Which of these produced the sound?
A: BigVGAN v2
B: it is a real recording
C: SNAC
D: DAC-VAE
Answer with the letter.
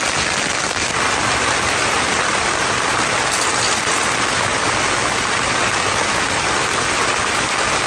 B